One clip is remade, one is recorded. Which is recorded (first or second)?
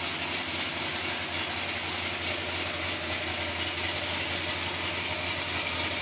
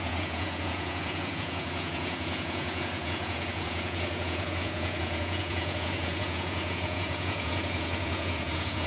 first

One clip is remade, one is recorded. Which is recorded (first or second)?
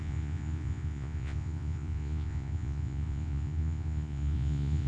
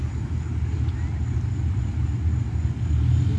second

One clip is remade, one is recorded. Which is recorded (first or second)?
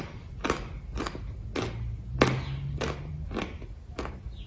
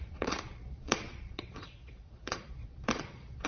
first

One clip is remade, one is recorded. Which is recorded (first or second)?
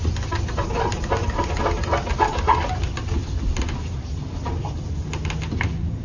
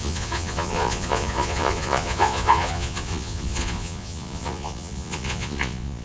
first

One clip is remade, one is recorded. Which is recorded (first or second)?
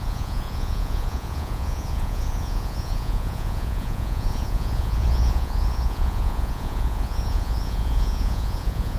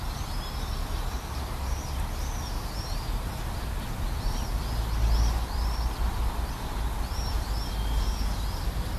second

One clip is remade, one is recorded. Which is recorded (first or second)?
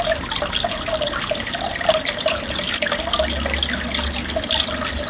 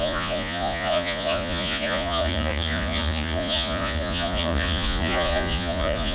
first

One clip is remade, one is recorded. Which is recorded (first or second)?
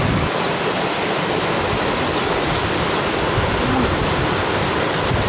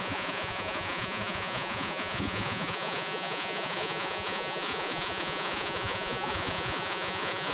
first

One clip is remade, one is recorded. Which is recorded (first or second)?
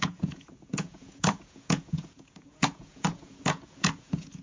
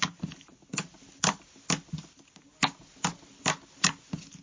second